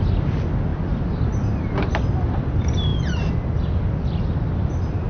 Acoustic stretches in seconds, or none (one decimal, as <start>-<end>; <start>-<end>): 0.0-5.1